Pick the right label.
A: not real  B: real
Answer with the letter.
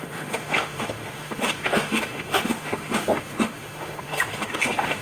A